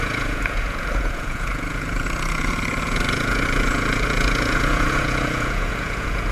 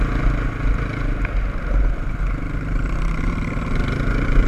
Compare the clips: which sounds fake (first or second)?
first